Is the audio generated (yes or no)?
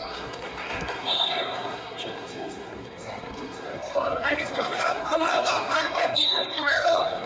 yes